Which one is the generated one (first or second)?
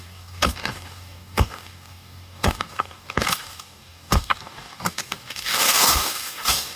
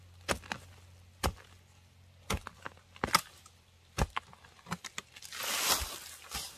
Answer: first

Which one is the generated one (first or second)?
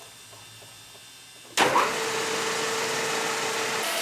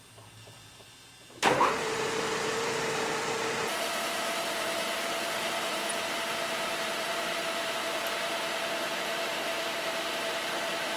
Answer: second